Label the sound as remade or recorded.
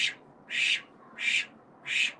recorded